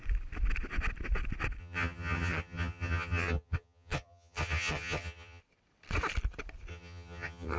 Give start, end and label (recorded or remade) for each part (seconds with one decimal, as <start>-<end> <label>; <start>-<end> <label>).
0.0-1.6 recorded; 1.6-5.4 remade; 5.4-6.7 recorded; 6.7-7.6 remade